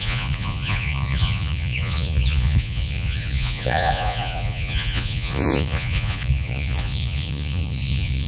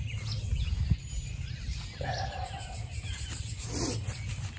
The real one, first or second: second